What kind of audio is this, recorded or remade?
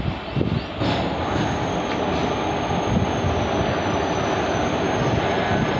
recorded